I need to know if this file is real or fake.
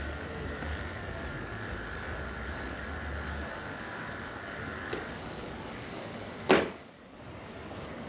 fake